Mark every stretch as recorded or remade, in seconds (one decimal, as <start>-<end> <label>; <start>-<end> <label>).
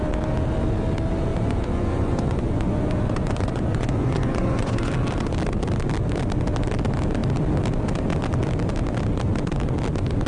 0.0-1.3 recorded; 1.3-4.9 remade; 4.9-10.3 recorded